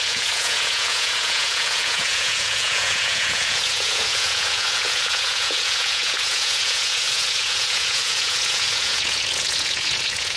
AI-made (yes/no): yes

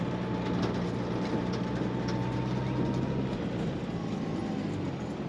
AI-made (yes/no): no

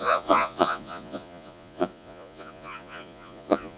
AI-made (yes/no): yes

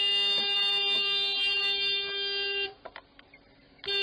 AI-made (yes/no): no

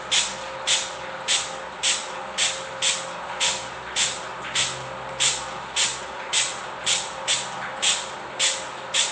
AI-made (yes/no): no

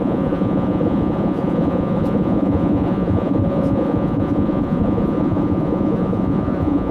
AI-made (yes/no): yes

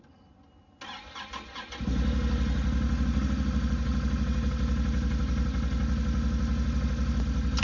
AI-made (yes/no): no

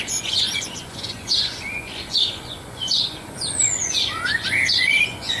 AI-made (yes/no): yes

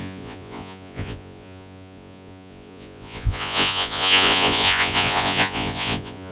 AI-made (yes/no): yes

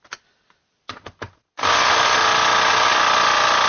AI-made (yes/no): no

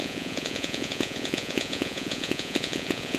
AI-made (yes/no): yes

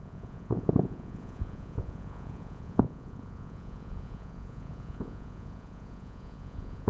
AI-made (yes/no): yes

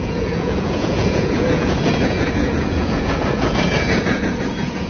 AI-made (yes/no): yes